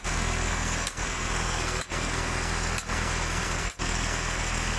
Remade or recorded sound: remade